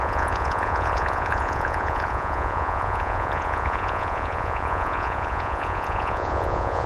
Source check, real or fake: fake